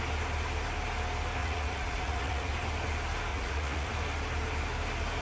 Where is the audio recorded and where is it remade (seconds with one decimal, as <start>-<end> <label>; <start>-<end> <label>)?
0.0-1.4 recorded; 1.4-2.5 remade; 2.5-3.3 recorded; 3.3-3.9 remade; 3.9-5.2 recorded